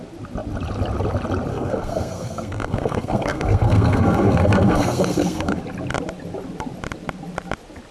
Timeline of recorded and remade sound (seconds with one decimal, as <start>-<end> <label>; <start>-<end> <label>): 0.0-1.5 recorded; 1.5-5.6 remade; 5.6-7.9 recorded